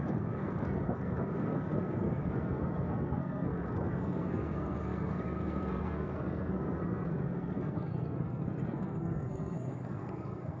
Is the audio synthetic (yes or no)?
yes